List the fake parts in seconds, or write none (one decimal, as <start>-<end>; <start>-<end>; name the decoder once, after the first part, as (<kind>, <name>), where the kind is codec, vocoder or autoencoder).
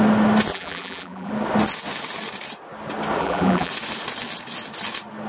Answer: 0.5-1.3 (vocoder, BigVGAN v2); 3.2-3.7